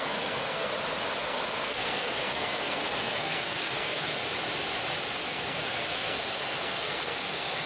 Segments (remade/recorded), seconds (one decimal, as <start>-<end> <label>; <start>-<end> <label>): 0.0-0.7 remade; 0.7-1.2 recorded; 1.2-4.2 remade; 4.2-5.2 recorded; 5.2-7.7 remade